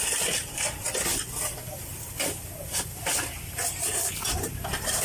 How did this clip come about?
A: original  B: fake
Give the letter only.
A